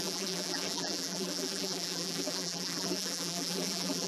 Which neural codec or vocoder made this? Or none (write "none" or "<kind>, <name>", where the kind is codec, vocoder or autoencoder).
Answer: vocoder, BigVGAN v2